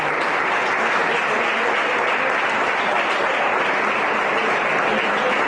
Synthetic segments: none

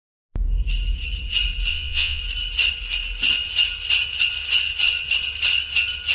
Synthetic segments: 1.7-2.2 (vocoder, Vocos)

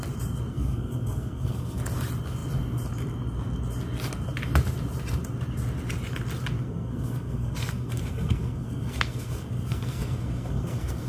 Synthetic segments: 0.5-1.8 (codec, SNAC); 6.6-11.1

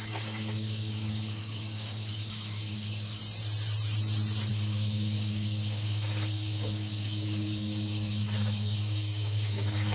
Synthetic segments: 0.0-3.2 (codec, DAC); 4.5-9.9

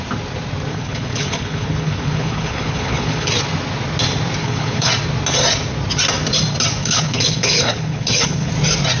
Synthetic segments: 0.7-3.3 (codec, HILCodec); 4.4-4.9; 6.8-8.5